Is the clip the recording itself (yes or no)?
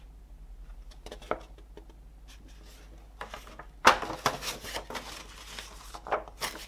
yes